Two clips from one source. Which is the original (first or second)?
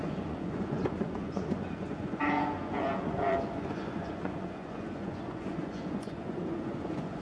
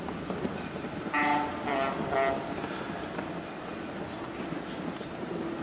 second